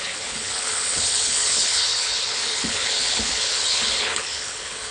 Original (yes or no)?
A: no